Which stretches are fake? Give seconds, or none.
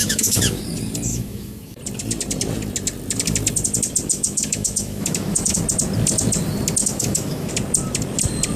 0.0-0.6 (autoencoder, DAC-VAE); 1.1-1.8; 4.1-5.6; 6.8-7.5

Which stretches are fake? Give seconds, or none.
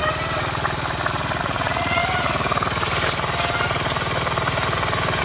1.4-2.0 (vocoder, Vocos)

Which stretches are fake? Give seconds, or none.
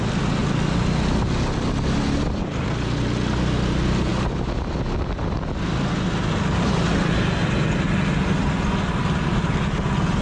none